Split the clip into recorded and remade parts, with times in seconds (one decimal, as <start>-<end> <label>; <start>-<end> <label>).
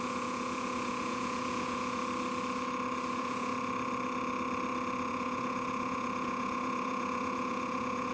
0.0-2.0 remade; 2.0-3.1 recorded; 3.1-3.5 remade; 3.5-5.1 recorded; 5.1-8.1 remade